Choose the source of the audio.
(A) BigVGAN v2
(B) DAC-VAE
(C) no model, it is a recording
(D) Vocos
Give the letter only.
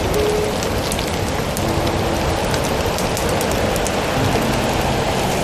C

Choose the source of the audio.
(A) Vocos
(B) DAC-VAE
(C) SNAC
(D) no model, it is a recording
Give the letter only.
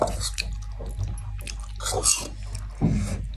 D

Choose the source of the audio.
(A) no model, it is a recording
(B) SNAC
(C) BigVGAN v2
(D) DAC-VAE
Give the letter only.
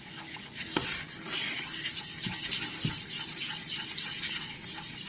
A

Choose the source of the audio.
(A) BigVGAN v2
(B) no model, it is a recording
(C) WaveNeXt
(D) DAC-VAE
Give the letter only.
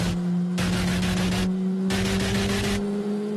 B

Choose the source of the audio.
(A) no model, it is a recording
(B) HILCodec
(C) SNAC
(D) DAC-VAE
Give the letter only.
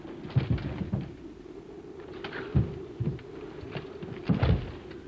A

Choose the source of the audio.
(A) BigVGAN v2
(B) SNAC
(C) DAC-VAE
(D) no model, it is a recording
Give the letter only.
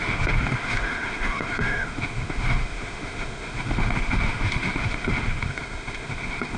C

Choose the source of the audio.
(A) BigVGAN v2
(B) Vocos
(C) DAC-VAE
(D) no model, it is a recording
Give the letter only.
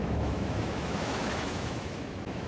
C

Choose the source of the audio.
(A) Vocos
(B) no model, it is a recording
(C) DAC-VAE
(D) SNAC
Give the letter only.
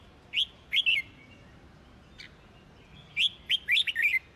B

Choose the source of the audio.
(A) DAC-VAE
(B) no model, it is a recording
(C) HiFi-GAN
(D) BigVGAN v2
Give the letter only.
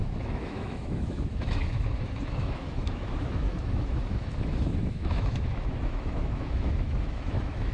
A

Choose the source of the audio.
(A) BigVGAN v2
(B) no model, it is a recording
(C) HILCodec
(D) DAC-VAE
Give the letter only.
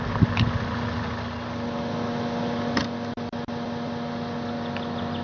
B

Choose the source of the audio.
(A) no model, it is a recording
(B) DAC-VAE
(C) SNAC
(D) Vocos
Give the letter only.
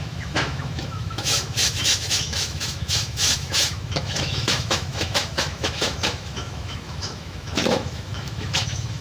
B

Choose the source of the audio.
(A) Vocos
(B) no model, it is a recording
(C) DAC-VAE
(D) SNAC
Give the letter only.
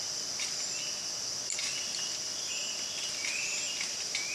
B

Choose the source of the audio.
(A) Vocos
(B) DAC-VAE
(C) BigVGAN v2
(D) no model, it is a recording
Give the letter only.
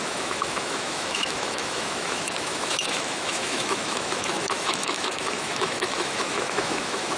B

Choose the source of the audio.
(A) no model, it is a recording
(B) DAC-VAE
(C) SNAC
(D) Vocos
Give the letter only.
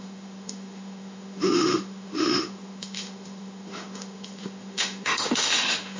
B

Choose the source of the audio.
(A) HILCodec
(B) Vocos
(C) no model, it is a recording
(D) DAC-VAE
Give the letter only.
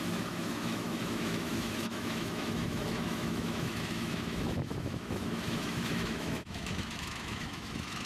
D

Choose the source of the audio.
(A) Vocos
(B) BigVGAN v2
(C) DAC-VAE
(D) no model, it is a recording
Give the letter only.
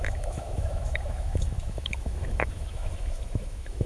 C